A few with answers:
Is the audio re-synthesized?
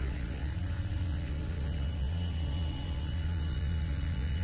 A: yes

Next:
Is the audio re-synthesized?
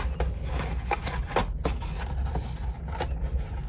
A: no